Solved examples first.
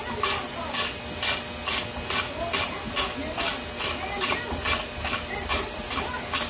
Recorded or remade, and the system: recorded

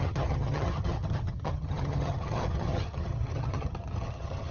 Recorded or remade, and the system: remade, vocoder, HiFi-GAN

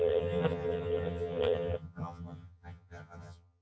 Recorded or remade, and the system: remade, vocoder, HiFi-GAN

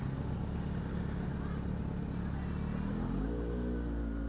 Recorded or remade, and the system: recorded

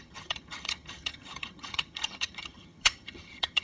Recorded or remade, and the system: remade, vocoder, HiFi-GAN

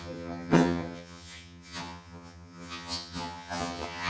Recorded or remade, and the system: remade, vocoder, HiFi-GAN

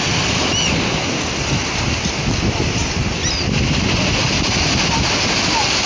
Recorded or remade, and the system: recorded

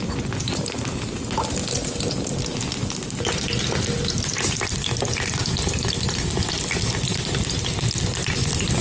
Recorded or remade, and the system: recorded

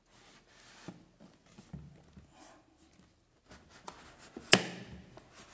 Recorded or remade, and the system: recorded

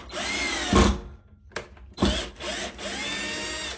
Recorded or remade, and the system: recorded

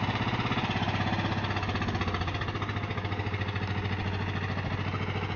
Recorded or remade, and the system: recorded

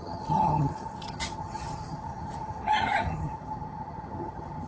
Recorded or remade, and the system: remade, vocoder, HiFi-GAN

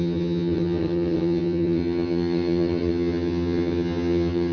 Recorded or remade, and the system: remade, vocoder, HiFi-GAN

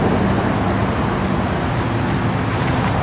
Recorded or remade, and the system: recorded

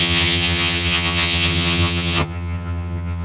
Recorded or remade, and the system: remade, vocoder, HiFi-GAN